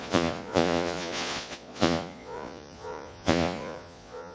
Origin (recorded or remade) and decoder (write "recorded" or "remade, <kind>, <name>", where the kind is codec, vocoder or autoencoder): remade, vocoder, Vocos